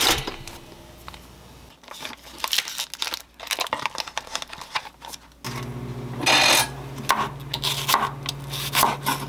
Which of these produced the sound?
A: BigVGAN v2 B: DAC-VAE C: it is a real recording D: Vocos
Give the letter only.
C